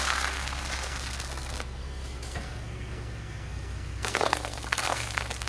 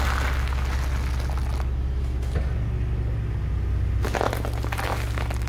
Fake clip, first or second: first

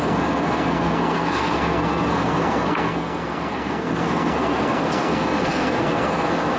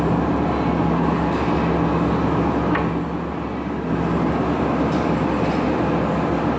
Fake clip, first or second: first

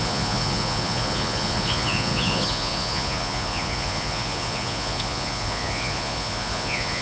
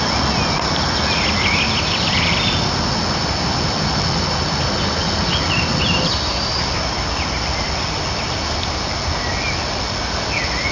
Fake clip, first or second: first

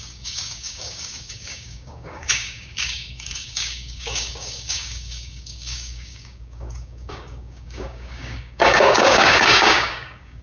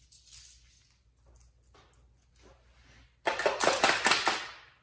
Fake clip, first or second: first